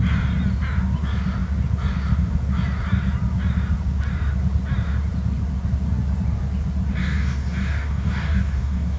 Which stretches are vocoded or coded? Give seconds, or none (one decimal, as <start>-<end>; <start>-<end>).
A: 7.0-9.0